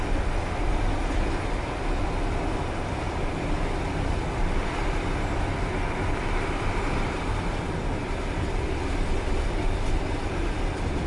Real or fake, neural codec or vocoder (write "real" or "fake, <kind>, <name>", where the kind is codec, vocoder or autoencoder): real